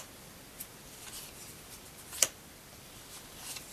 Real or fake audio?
real